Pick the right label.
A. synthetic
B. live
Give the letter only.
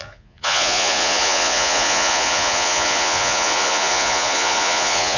A